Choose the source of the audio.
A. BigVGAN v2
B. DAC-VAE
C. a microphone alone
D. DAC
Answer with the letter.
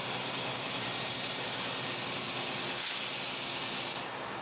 C